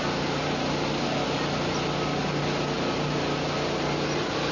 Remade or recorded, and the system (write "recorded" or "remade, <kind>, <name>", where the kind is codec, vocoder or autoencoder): recorded